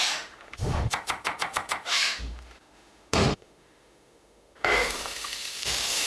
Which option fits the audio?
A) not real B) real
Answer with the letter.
A